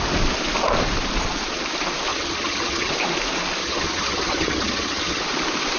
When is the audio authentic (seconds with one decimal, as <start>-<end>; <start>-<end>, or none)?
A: 0.0-2.1; 2.9-3.6; 5.2-5.8